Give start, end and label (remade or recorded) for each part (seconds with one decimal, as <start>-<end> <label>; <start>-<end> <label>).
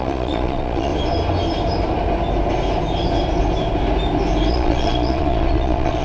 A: 0.0-0.9 remade; 0.9-4.5 recorded; 4.5-6.0 remade